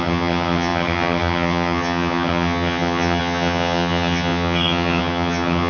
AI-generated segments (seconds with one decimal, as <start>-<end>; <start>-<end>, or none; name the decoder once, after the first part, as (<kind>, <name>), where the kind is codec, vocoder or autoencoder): 0.0-5.7 (vocoder, HiFi-GAN)